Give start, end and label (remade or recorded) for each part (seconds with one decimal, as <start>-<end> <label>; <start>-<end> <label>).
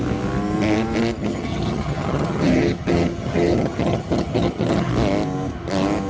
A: 0.0-1.2 recorded; 1.2-4.9 remade; 4.9-6.1 recorded